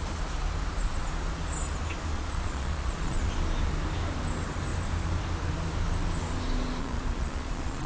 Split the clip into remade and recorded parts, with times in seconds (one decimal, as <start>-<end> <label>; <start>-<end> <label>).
0.0-2.1 recorded; 2.1-3.3 remade; 3.3-6.8 recorded; 6.8-7.9 remade